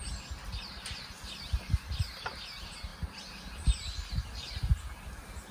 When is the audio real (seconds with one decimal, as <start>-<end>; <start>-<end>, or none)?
0.0-5.5